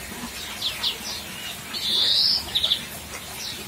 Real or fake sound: real